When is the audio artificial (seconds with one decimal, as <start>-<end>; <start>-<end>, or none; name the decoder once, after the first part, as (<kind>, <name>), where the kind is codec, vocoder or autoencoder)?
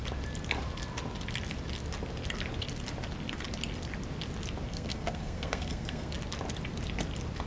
4.7-6.1 (codec, SNAC)